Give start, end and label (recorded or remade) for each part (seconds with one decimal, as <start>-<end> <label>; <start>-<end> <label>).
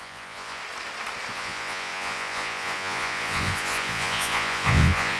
0.0-0.6 remade; 0.6-1.3 recorded; 1.3-5.2 remade